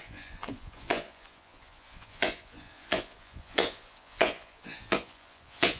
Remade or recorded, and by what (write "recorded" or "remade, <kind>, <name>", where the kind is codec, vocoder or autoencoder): remade, vocoder, Vocos